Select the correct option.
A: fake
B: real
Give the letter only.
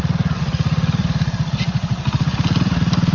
B